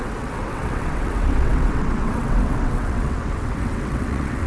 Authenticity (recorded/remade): remade